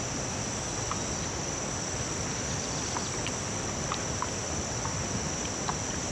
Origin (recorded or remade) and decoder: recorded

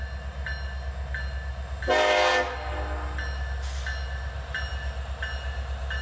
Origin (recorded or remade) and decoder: recorded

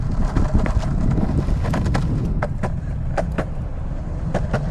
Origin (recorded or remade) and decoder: recorded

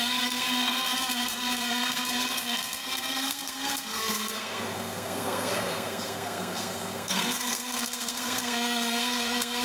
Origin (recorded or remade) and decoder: remade, codec, SNAC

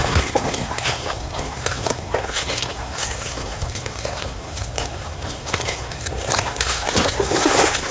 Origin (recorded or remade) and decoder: remade, codec, SNAC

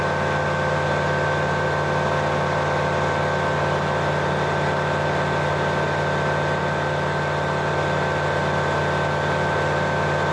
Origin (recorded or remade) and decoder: recorded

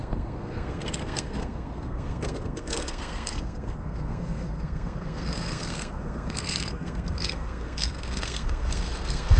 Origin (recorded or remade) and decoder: remade, codec, SNAC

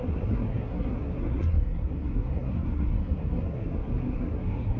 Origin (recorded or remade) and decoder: remade, codec, SNAC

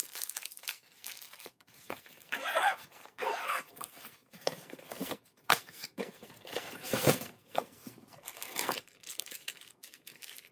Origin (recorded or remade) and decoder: remade, codec, SNAC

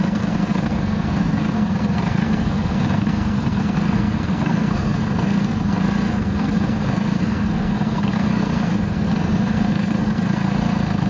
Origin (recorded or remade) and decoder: remade, codec, SNAC